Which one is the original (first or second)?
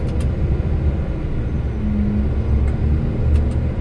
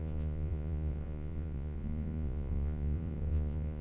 first